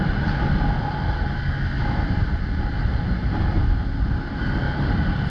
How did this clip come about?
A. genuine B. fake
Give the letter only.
A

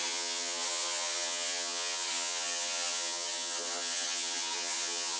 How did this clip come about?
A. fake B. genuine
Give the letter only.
A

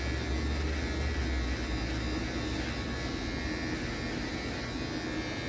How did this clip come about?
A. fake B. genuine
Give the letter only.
B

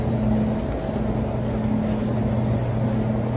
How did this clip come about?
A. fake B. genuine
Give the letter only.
B